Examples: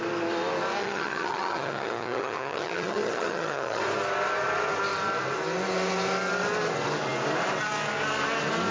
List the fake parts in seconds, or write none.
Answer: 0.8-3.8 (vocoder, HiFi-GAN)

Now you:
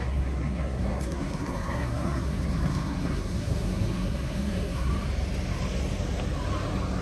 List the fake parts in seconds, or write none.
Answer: 0.0-4.9 (codec, SNAC)

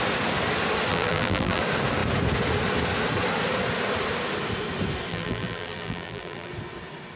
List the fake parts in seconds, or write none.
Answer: 0.9-1.6 (vocoder, BigVGAN v2); 5.1-6.5

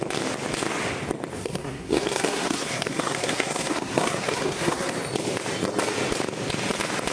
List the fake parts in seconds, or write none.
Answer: 1.4-4.9 (codec, SNAC)

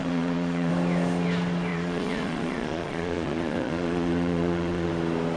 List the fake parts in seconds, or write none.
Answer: 0.0-0.7 (vocoder, Vocos); 1.7-4.9